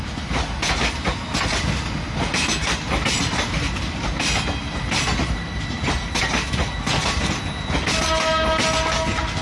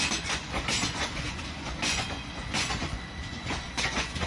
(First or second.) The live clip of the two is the first